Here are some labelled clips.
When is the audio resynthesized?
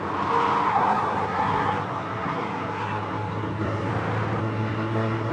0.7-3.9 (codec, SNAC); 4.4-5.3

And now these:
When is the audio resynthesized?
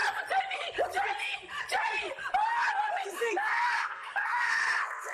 3.1-5.1 (codec, SNAC)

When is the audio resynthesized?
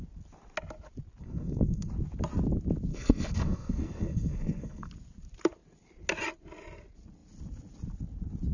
1.2-1.9 (codec, SNAC); 2.9-4.9